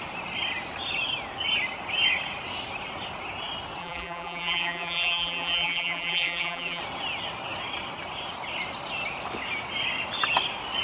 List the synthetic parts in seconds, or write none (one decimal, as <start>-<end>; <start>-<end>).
3.8-6.8